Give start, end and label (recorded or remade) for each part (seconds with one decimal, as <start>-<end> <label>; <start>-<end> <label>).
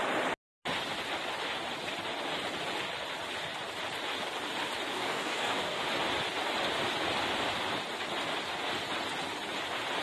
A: 0.0-4.9 recorded; 4.9-5.8 remade; 5.8-10.0 recorded